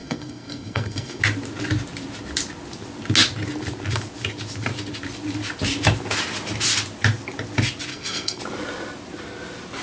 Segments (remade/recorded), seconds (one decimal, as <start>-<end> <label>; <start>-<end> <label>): 0.0-1.2 remade; 1.2-7.9 recorded; 7.9-8.4 remade; 8.4-9.8 recorded